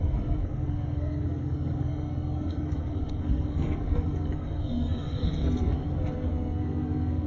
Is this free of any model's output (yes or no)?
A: no